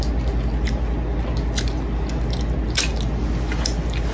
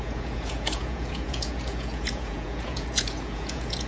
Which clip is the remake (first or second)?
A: second